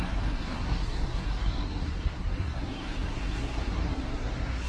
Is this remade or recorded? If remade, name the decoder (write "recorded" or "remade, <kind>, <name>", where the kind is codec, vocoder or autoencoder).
remade, codec, SNAC